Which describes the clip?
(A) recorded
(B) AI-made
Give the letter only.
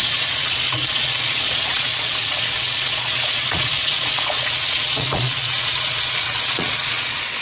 B